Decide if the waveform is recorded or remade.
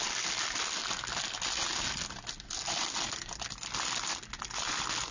recorded